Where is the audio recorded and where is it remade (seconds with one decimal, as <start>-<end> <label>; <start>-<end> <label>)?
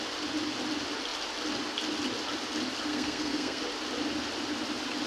0.0-2.9 recorded; 2.9-3.6 remade; 3.6-5.1 recorded